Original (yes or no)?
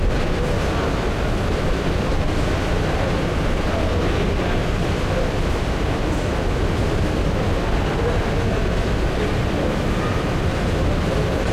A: yes